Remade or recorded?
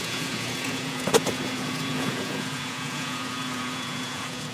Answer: remade